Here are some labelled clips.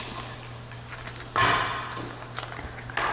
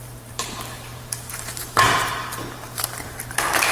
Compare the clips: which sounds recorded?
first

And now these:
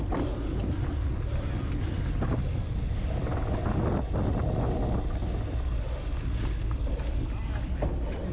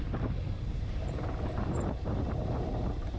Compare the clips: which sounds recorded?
first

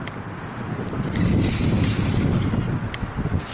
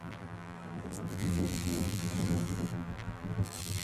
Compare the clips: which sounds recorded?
first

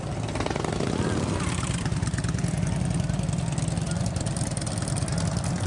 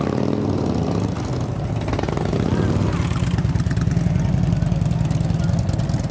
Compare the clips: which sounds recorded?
second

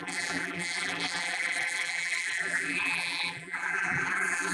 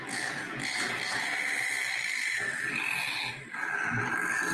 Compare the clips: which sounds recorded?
second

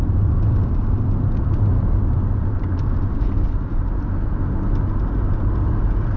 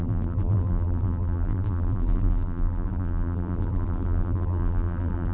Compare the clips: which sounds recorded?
first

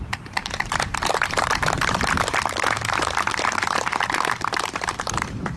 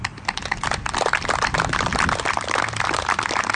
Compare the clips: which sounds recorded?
second